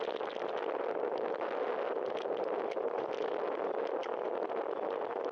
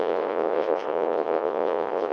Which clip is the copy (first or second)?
second